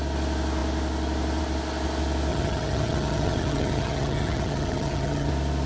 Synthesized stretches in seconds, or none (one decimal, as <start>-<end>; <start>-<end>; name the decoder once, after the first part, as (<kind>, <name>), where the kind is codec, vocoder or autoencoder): 2.3-5.3 (vocoder, HiFi-GAN)